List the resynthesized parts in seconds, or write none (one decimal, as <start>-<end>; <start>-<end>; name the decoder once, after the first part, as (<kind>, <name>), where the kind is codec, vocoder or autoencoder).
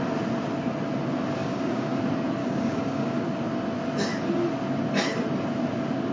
1.4-2.0 (codec, DAC); 2.4-3.2